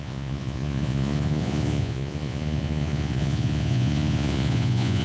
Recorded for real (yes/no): no